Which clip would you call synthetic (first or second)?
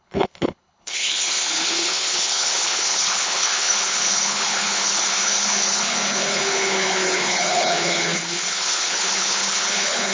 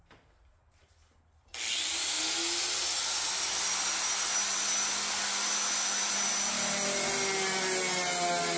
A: first